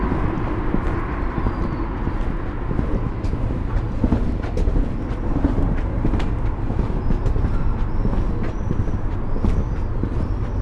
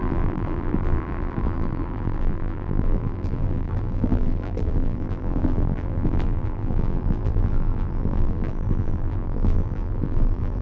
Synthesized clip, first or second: second